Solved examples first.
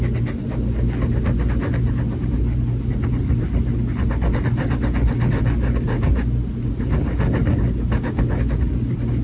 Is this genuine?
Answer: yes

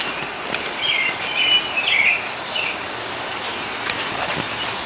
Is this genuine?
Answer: no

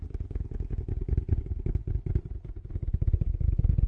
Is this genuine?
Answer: yes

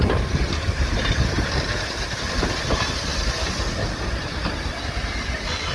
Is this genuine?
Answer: yes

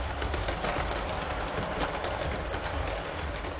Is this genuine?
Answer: yes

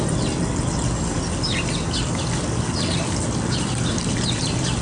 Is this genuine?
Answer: yes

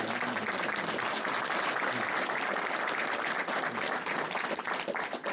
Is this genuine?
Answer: yes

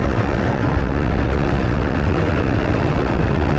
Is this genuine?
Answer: no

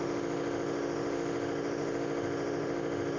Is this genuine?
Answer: no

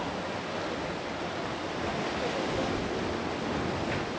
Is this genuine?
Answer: yes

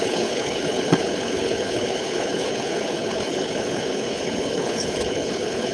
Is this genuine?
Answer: no